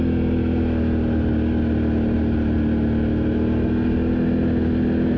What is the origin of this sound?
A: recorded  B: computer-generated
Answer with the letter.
A